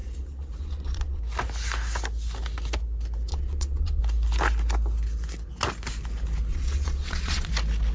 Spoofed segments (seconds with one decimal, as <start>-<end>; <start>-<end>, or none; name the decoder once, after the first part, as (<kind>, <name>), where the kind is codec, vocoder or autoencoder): 0.0-1.2 (vocoder, Vocos); 3.3-4.0; 6.5-7.5